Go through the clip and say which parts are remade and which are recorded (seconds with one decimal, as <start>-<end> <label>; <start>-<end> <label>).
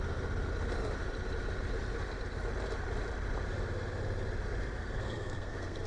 0.0-4.8 recorded; 4.8-5.9 remade